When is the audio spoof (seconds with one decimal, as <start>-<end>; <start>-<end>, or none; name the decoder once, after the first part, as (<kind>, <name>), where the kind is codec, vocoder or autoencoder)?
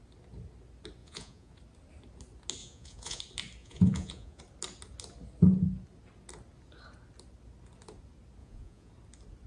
1.0-1.5 (vocoder, Vocos); 2.6-3.2; 3.6-4.4; 8.4-8.9